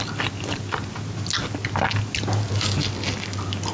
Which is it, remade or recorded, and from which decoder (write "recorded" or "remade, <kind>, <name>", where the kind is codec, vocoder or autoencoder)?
recorded